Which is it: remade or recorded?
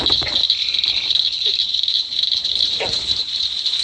remade